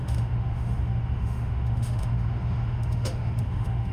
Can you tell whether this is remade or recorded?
remade